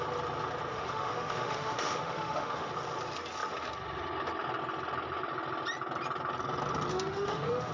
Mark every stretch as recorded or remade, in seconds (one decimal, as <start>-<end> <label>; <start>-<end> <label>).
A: 0.0-0.7 recorded; 0.7-2.7 remade; 2.7-6.9 recorded; 6.9-7.7 remade

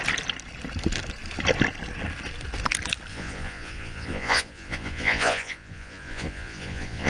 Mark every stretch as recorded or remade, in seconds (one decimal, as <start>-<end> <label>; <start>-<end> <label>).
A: 0.0-3.1 recorded; 3.1-7.1 remade

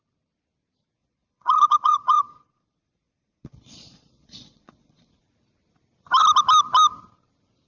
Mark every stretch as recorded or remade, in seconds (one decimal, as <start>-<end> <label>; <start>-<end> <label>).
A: 0.0-1.0 recorded; 1.0-5.1 remade; 5.1-7.7 recorded

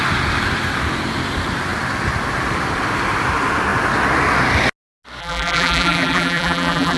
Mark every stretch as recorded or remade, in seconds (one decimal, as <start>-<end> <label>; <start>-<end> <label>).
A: 0.0-5.2 recorded; 5.2-7.0 remade

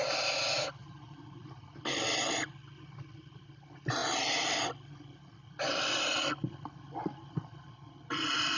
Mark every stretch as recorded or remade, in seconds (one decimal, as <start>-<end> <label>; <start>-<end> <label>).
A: 0.0-0.8 recorded; 0.8-1.8 remade; 1.8-8.6 recorded